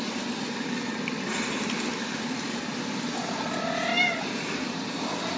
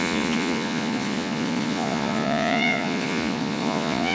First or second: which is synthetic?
second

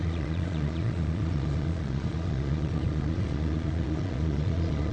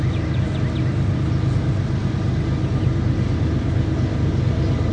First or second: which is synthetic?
first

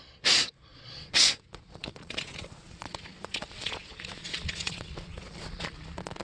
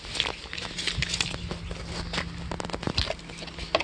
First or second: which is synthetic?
first